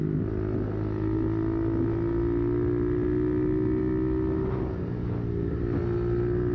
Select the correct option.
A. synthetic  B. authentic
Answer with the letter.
B